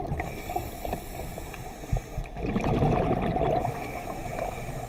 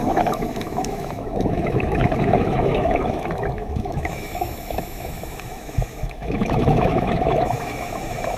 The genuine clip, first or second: first